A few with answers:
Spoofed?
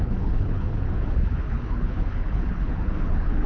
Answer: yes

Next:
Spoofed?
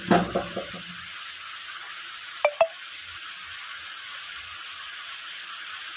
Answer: no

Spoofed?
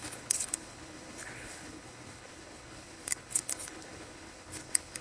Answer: yes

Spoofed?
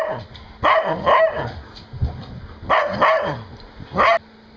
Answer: no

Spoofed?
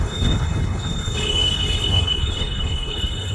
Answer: yes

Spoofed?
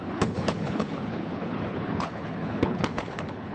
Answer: yes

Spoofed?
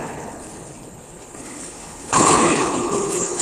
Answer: yes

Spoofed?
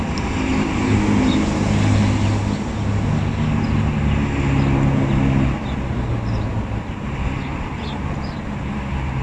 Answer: no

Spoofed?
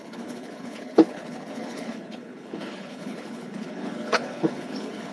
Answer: yes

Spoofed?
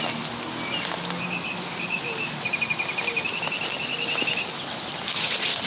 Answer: no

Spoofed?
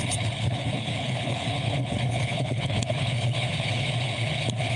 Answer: yes